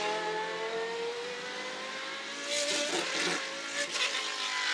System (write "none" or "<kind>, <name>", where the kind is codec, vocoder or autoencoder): none